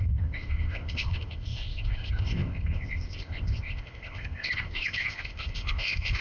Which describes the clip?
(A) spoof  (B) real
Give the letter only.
A